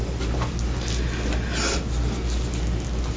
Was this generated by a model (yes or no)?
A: no